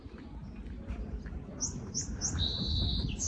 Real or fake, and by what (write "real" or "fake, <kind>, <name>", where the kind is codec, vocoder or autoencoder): real